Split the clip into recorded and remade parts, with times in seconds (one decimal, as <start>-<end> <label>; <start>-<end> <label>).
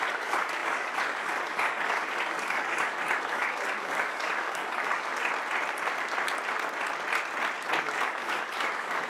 0.0-5.1 remade; 5.1-7.8 recorded; 7.8-9.1 remade